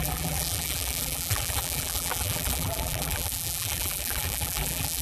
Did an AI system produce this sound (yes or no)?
yes